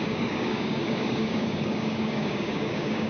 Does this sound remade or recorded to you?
remade